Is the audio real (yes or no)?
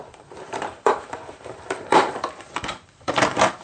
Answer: no